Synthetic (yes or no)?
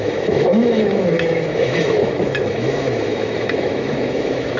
yes